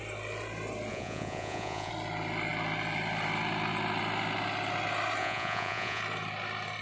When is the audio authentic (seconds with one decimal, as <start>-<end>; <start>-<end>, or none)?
0.0-0.9; 1.9-5.2; 6.0-6.8